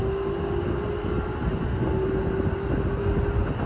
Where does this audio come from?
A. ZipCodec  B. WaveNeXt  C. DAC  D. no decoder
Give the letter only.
D